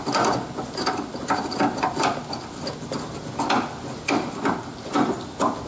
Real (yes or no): yes